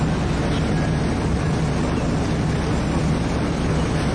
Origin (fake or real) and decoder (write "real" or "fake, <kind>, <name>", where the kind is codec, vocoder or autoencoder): real